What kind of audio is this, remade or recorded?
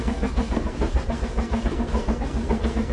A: remade